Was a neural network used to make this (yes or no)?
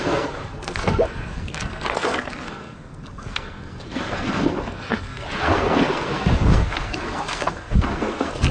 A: yes